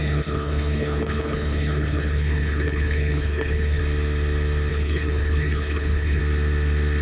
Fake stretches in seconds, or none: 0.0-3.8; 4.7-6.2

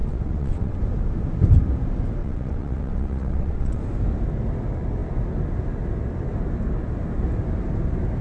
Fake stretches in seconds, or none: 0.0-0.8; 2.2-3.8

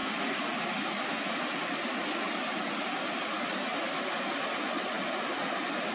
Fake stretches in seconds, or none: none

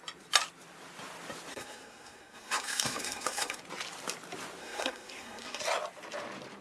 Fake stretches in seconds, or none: 1.5-3.6; 4.6-5.6

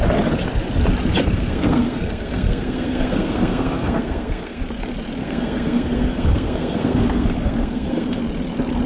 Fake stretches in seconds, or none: 1.2-4.6; 5.2-8.2

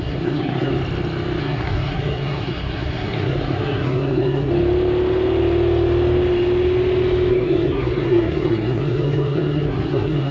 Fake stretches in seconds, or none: 0.0-0.7; 1.4-4.5; 7.3-10.3

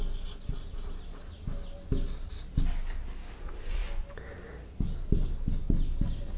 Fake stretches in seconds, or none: none

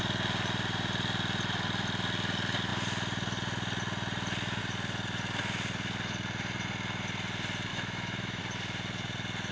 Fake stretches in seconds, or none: 7.7-8.4